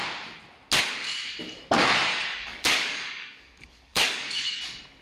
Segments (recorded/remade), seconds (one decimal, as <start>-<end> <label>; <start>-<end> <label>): 0.0-2.1 recorded; 2.1-4.6 remade; 4.6-5.0 recorded